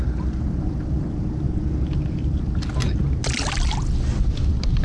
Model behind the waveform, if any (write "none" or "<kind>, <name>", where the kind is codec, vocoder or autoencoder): none